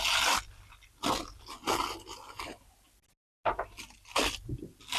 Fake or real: real